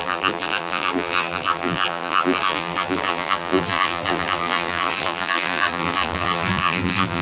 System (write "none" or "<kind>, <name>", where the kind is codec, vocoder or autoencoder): vocoder, BigVGAN v2